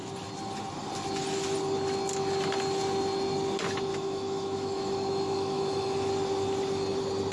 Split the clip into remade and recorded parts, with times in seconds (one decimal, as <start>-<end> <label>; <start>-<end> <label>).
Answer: 0.0-3.9 recorded; 3.9-6.1 remade; 6.1-7.3 recorded